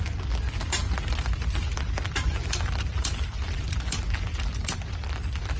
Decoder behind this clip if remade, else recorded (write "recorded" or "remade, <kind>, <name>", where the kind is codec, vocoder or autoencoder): recorded